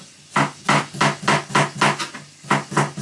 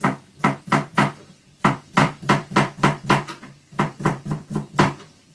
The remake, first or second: second